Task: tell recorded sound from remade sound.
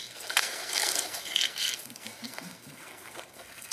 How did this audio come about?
remade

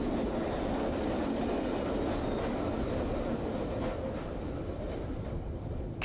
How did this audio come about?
recorded